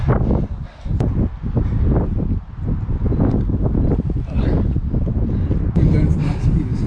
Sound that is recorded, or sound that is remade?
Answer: recorded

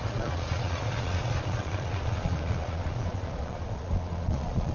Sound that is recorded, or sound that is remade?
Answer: remade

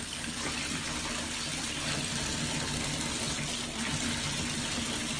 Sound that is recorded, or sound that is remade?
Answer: recorded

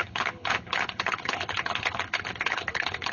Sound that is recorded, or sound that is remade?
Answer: remade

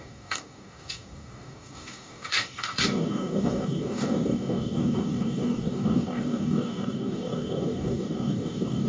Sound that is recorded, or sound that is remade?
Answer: remade